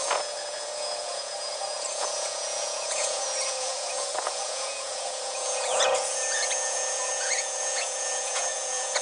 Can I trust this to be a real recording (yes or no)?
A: no